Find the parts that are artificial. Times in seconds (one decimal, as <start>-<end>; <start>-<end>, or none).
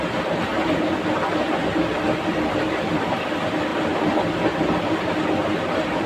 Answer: none